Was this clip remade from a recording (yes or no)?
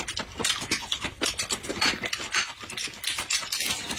no